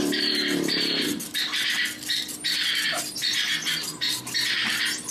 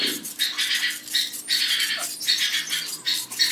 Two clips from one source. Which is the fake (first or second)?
first